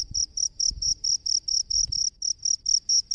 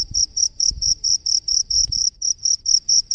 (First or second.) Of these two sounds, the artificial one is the second